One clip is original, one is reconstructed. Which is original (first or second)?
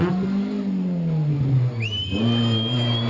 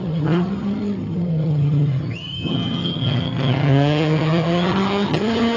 first